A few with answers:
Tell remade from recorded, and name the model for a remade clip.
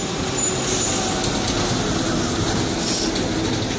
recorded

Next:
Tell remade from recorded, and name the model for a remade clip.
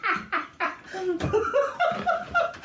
recorded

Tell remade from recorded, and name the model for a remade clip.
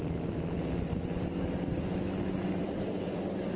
recorded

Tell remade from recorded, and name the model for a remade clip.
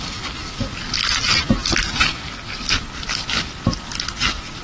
recorded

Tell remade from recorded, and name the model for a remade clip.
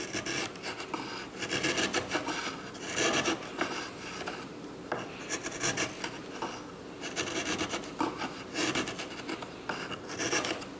recorded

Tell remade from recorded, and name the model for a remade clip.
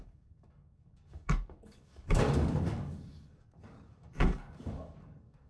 remade, codec, DAC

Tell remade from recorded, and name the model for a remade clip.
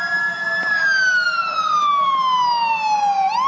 recorded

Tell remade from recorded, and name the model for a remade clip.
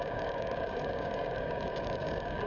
remade, codec, DAC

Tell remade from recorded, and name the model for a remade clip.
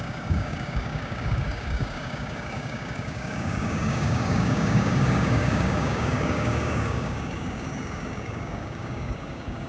remade, codec, DAC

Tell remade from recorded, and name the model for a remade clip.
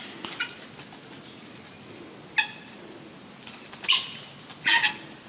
recorded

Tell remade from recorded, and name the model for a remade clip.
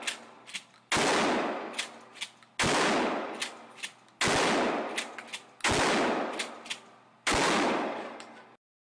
recorded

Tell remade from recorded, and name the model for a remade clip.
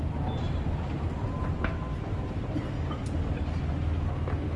recorded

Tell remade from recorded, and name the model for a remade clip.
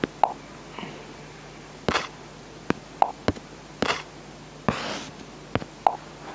recorded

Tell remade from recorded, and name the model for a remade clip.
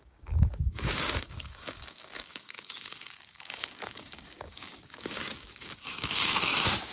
remade, codec, DAC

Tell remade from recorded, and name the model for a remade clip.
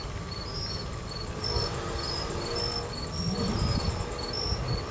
recorded